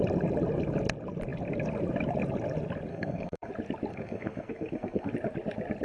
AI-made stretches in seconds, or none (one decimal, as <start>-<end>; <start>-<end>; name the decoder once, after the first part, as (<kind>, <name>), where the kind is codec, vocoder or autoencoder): 2.9-3.5 (codec, SNAC); 3.9-5.1